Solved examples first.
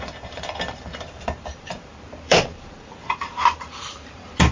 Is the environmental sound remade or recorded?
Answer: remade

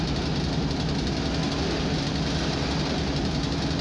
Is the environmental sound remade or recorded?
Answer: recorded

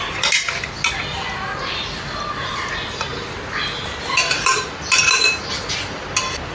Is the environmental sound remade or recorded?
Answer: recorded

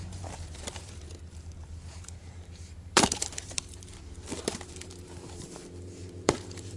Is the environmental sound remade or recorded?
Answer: remade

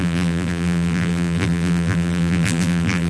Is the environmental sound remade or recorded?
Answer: remade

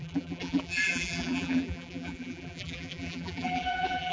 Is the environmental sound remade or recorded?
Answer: remade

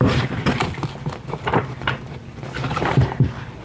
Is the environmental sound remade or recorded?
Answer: remade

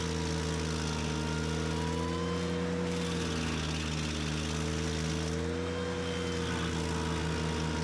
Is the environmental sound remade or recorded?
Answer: recorded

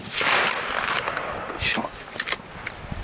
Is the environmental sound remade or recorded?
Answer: recorded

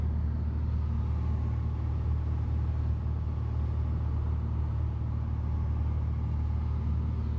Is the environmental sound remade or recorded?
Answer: recorded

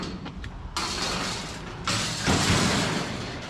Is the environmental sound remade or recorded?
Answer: recorded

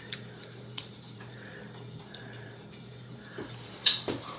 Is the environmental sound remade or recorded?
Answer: remade